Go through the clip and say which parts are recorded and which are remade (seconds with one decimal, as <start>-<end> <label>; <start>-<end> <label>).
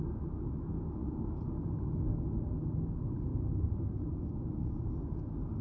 0.0-3.3 recorded; 3.3-4.8 remade; 4.8-5.6 recorded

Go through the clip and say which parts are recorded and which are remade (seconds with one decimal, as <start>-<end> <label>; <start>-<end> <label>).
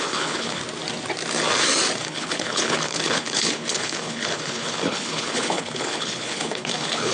0.0-0.6 remade; 0.6-2.0 recorded; 2.0-7.1 remade